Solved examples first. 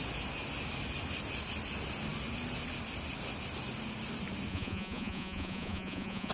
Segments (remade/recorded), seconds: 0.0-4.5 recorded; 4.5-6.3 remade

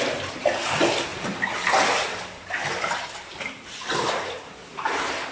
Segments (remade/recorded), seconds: 0.0-1.1 recorded; 1.1-1.7 remade; 1.7-2.1 recorded; 2.1-4.8 remade; 4.8-5.3 recorded

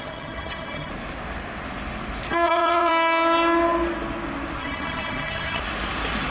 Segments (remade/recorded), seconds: 0.0-0.9 remade; 0.9-2.3 recorded; 2.3-2.9 remade; 2.9-4.6 recorded; 4.6-5.6 remade; 5.6-6.3 recorded

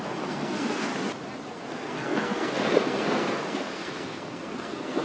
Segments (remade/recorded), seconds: 0.0-0.9 remade; 0.9-1.5 recorded; 1.5-5.0 remade

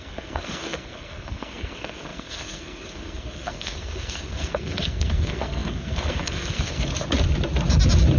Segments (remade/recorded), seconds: 0.0-6.9 remade; 6.9-8.2 recorded